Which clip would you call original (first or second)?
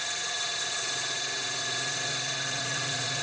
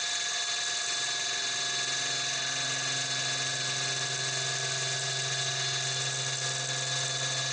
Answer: second